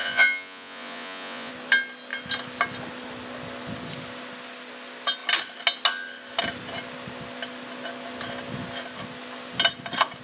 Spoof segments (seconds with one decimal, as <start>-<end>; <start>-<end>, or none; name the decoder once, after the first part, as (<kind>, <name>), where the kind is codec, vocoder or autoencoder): 0.0-1.5 (vocoder, Vocos)